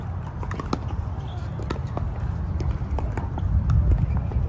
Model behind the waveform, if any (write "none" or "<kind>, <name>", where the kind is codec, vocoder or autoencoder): none